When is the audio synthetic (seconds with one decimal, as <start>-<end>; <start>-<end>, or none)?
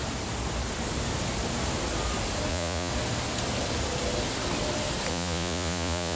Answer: 2.5-2.9; 5.1-6.2